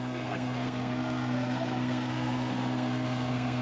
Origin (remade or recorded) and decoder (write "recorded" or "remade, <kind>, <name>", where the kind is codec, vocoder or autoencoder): remade, codec, SNAC